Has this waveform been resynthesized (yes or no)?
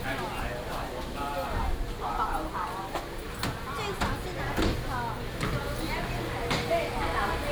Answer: no